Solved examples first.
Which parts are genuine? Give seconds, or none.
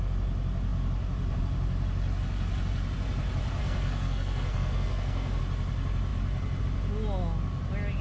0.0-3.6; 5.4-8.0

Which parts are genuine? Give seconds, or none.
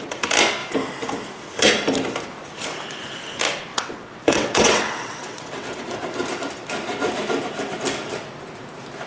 0.0-3.7; 5.8-9.1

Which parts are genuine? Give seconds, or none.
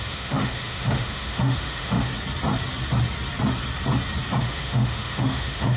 2.1-4.4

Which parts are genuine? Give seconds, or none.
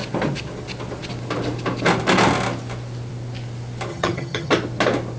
0.0-3.9; 4.5-5.2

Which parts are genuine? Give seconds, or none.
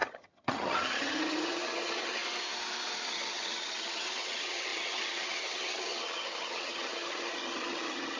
2.2-3.1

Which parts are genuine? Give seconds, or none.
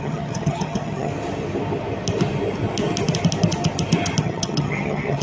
1.1-4.2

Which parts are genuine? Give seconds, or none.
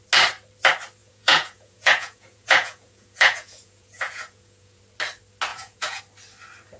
0.0-1.0; 4.8-5.5; 6.0-6.8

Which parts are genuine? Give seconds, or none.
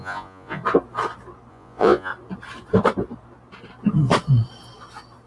0.6-1.5; 2.1-5.3